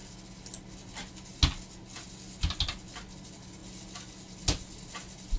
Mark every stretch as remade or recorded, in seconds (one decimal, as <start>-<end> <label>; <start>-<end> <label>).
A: 0.0-5.4 recorded